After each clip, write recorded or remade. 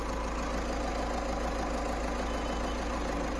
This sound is recorded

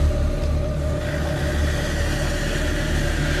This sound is recorded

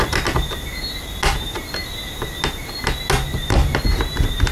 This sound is recorded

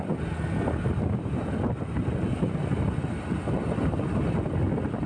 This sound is recorded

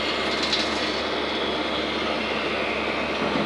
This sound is recorded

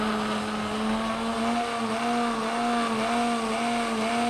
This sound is recorded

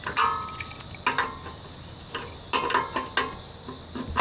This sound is recorded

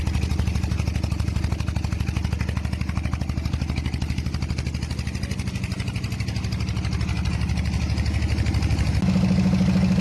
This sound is recorded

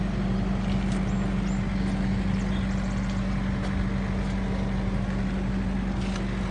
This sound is recorded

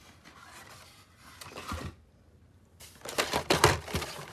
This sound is remade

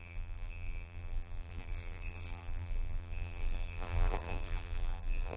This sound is remade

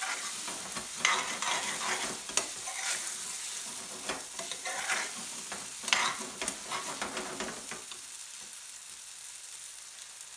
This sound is recorded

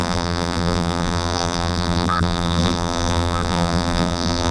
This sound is remade